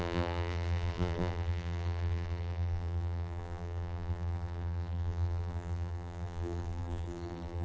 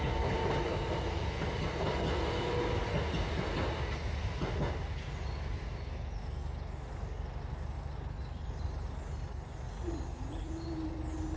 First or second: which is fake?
first